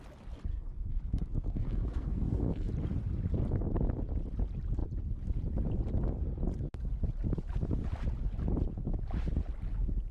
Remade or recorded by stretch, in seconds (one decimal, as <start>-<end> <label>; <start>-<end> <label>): 0.0-0.5 recorded; 0.5-2.7 remade; 2.7-10.1 recorded